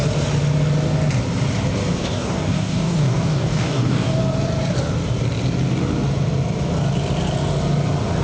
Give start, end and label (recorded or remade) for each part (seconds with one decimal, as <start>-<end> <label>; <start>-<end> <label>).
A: 0.0-1.9 recorded; 1.9-4.2 remade; 4.2-8.2 recorded